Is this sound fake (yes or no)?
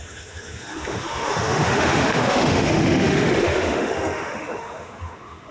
yes